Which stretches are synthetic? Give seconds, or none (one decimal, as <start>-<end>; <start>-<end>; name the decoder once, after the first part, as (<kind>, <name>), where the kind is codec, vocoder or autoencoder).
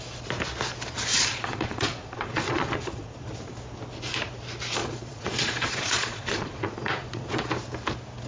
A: 1.1-3.3 (vocoder, Vocos); 4.8-7.4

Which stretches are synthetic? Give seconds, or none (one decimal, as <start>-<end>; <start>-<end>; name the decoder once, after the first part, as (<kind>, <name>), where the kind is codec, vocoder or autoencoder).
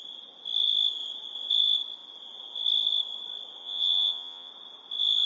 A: 3.6-4.5 (vocoder, Vocos)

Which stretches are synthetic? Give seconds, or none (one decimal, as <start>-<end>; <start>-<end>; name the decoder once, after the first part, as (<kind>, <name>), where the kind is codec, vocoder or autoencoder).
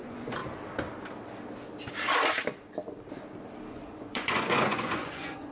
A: 0.0-0.4 (vocoder, Vocos); 3.7-5.5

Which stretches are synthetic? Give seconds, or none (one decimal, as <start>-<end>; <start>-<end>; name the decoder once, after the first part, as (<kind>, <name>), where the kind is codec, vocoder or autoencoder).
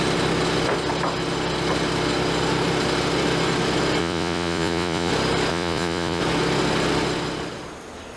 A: 4.0-5.1 (vocoder, Vocos); 5.5-6.2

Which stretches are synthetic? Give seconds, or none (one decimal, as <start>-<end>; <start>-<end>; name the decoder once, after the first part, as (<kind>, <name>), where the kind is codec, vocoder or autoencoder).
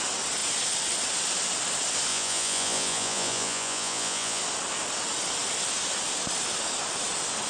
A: 2.1-4.4 (vocoder, Vocos)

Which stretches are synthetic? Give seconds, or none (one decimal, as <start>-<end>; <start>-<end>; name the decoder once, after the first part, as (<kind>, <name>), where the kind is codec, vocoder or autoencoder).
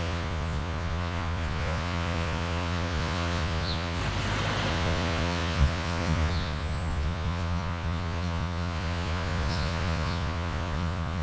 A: 0.0-4.0 (vocoder, Vocos); 4.7-11.2